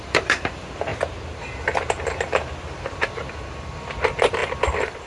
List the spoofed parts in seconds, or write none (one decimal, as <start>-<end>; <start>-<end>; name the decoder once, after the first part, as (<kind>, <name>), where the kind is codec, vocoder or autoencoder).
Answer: 0.0-0.9 (vocoder, BigVGAN v2); 1.4-5.1